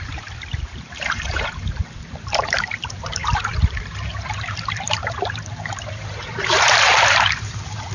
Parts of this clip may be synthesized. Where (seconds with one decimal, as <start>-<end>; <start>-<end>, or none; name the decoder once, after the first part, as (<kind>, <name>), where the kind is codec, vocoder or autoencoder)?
0.0-7.9 (vocoder, BigVGAN v2)